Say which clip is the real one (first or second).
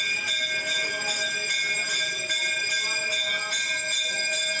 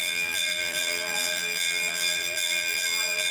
first